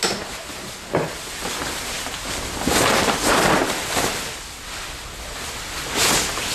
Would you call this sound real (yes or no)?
yes